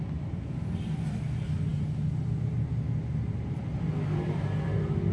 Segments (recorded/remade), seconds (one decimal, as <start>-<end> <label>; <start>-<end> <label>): 0.0-5.1 recorded